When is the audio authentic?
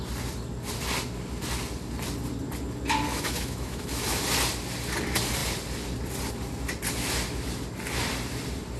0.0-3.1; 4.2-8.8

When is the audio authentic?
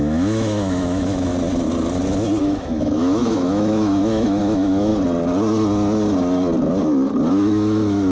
1.3-2.4; 4.9-7.3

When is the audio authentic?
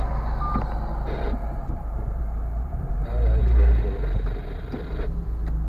0.0-5.7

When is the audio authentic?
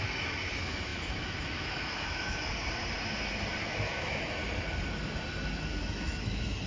2.5-3.6; 4.4-5.8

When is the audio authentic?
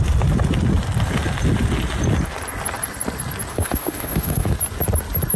0.0-3.5; 4.5-5.4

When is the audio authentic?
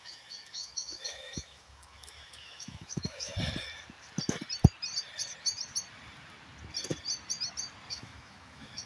3.3-7.9